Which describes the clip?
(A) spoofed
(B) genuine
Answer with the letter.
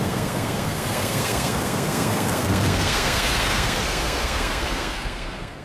A